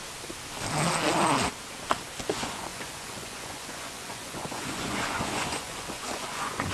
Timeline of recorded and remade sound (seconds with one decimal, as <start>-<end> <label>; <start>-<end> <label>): 0.0-2.2 recorded; 2.2-6.7 remade